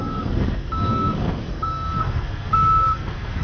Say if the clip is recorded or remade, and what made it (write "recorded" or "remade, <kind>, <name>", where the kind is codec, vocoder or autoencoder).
remade, codec, SNAC